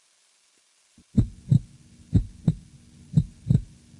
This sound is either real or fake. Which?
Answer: real